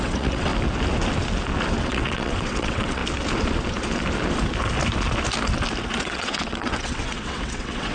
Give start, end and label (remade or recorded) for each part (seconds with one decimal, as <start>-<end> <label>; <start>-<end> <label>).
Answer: 0.0-0.5 remade; 0.5-1.8 recorded; 1.8-3.0 remade; 3.0-6.0 recorded; 6.0-7.9 remade